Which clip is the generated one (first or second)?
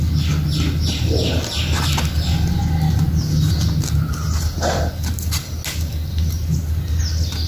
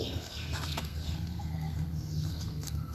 second